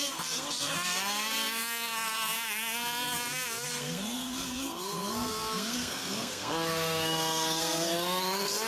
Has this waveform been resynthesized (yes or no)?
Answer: yes